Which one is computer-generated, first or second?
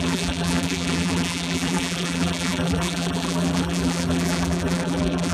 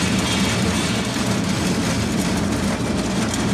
first